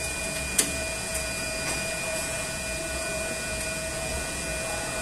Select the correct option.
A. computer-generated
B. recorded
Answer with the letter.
A